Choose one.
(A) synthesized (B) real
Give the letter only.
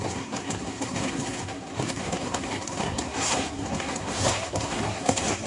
A